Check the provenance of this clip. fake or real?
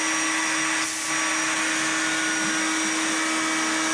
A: real